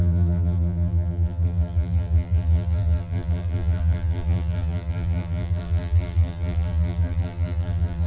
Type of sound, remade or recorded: remade